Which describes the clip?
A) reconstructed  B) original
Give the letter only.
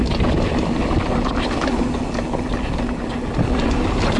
B